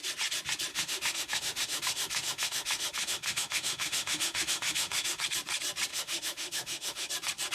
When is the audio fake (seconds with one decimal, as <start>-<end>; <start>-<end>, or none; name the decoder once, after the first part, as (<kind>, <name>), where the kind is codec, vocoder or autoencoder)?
0.7-5.2 (autoencoder, DAC-VAE); 5.9-7.1